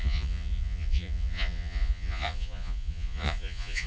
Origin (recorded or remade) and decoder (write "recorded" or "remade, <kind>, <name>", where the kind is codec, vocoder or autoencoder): remade, vocoder, Vocos